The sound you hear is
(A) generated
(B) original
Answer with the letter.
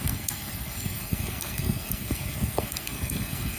A